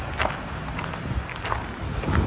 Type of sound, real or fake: real